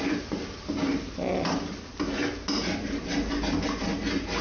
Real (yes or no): yes